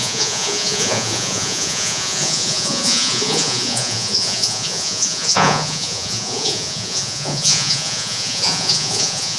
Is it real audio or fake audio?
fake